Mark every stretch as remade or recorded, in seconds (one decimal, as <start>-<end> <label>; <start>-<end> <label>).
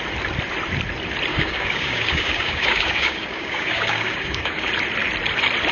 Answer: 0.0-1.3 recorded; 1.3-4.7 remade; 4.7-5.7 recorded